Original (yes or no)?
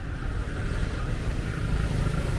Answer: yes